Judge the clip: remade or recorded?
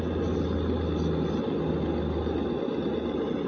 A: recorded